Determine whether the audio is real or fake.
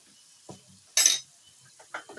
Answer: real